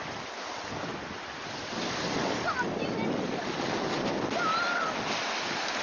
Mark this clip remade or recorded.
recorded